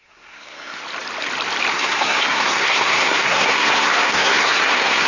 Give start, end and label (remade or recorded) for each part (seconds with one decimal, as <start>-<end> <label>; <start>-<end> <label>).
0.0-0.8 remade; 0.8-1.7 recorded; 1.7-5.1 remade